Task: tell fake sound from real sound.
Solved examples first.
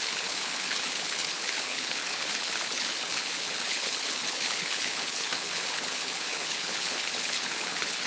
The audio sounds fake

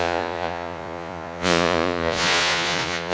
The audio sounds fake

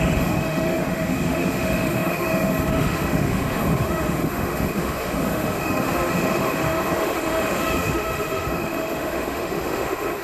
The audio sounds fake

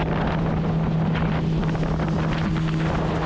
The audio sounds real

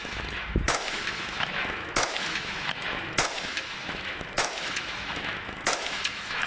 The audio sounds fake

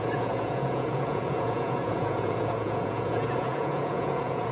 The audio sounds fake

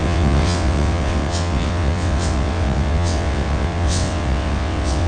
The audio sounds fake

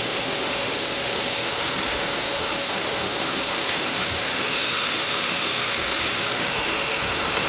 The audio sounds fake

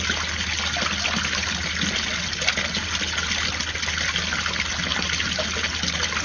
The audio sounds real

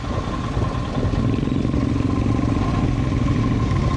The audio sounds real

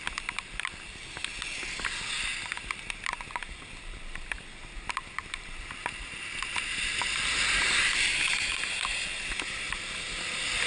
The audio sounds real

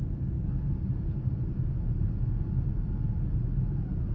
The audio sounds real